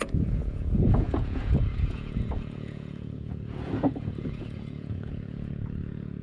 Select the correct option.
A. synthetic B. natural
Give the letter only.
A